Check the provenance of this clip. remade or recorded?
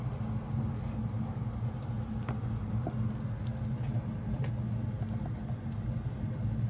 recorded